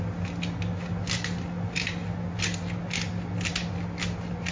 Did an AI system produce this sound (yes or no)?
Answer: no